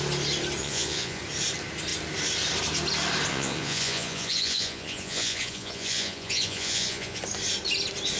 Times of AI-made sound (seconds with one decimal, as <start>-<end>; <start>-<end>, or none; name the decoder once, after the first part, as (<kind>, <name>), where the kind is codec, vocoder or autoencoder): 0.6-1.2 (vocoder, Vocos); 3.3-7.2